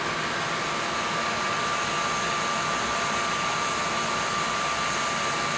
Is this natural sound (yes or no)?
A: yes